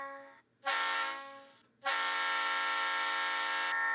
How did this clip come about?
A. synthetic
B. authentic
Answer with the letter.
B